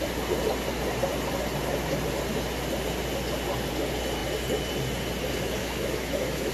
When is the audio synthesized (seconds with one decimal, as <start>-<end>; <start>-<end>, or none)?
5.6-6.5